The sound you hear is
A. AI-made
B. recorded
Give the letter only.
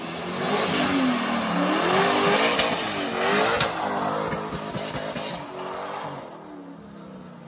B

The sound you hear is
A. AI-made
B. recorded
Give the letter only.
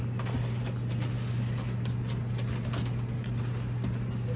B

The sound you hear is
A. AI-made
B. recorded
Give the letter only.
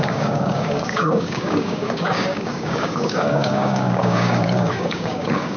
A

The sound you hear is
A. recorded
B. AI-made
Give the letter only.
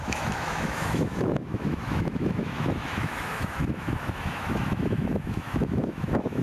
B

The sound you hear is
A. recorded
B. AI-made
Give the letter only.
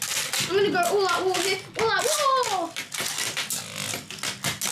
A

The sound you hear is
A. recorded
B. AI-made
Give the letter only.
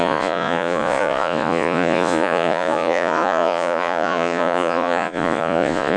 B